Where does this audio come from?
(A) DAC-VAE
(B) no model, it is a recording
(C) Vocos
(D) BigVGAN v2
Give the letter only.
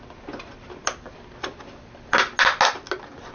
B